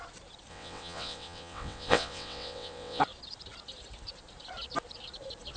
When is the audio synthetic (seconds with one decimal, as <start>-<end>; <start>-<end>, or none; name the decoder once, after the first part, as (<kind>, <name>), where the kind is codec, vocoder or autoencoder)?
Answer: 0.5-3.0 (vocoder, WaveNeXt)

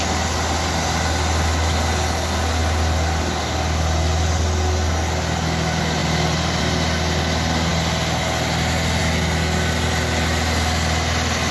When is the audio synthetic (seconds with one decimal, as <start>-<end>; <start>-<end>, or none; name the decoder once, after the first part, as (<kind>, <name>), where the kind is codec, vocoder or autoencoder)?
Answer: none

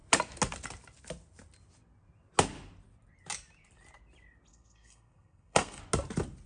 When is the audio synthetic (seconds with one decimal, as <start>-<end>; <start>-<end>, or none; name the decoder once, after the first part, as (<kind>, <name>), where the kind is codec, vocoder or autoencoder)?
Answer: 4.5-5.8 (codec, SNAC)

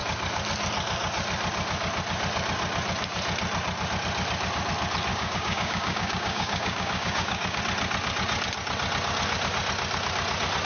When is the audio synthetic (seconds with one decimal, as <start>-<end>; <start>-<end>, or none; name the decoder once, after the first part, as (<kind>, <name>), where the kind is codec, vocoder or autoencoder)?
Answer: 5.1-7.6 (codec, DAC)